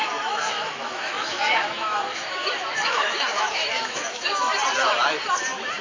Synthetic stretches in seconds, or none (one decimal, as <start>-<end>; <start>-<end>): 0.0-4.5